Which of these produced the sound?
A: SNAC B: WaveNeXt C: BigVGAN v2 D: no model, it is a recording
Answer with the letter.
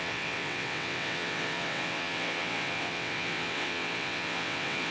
B